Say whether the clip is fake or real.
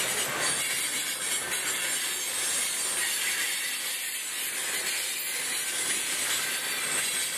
real